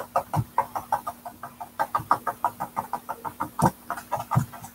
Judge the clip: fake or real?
real